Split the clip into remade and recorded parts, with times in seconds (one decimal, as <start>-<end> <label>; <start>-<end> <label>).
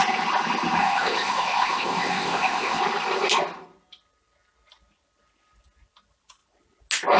0.0-0.8 recorded; 0.8-2.8 remade; 2.8-7.2 recorded